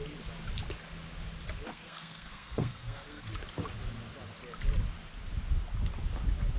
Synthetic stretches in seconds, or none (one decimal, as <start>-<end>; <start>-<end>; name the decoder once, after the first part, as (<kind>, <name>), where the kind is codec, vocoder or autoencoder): 1.7-3.3 (codec, SNAC)